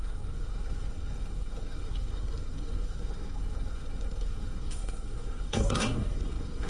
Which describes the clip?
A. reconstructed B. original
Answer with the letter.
A